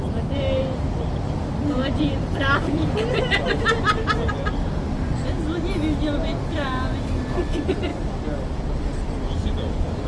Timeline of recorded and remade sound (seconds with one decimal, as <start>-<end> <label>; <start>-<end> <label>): 0.0-1.8 recorded; 1.8-3.5 remade; 3.5-10.1 recorded